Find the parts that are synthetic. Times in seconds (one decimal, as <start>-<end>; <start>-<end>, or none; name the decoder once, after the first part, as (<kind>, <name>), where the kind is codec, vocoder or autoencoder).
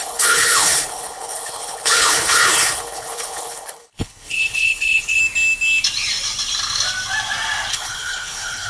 0.0-5.2 (codec, HILCodec); 7.7-8.7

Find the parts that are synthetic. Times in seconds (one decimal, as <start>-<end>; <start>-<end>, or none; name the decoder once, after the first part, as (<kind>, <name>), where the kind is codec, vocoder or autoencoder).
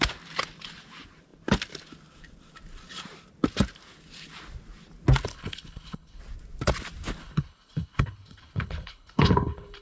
5.3-6.2 (codec, HILCodec); 7.2-9.8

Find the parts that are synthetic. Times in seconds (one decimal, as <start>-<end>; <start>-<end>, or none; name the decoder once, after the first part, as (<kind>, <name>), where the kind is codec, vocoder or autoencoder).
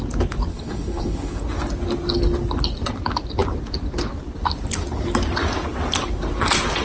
0.5-1.4 (codec, HILCodec)